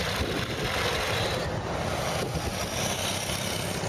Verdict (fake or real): real